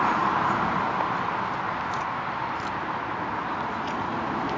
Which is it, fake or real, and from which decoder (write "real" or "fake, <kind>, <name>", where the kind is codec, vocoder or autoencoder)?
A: real